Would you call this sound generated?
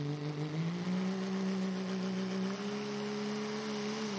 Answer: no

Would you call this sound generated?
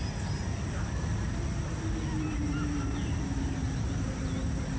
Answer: no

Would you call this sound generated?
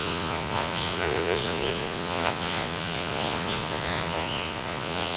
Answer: yes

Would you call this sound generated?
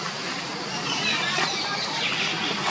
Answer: no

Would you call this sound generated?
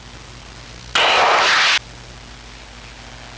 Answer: no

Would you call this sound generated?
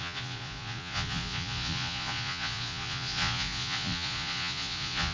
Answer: yes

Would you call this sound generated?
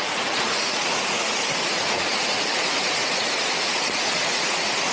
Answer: yes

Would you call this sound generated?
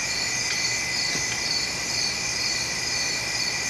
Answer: no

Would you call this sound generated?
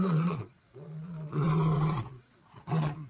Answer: yes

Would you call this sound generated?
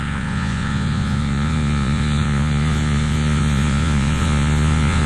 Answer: yes